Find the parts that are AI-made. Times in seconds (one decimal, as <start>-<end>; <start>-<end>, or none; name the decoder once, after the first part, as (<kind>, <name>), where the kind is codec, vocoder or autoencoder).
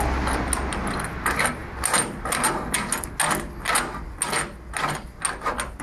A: none